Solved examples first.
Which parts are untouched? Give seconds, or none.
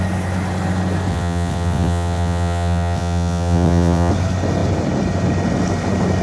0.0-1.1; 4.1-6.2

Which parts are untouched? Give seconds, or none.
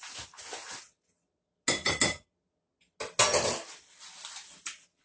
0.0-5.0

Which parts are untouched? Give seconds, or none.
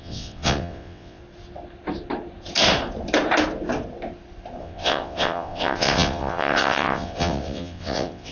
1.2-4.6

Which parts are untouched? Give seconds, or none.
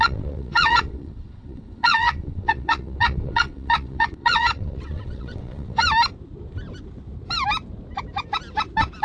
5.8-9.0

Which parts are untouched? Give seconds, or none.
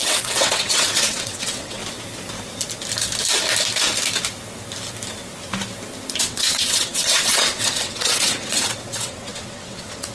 1.8-6.2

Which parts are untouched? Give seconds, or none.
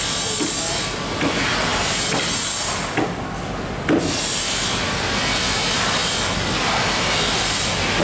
0.0-8.0